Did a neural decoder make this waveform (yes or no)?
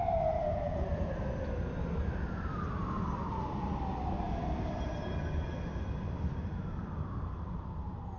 no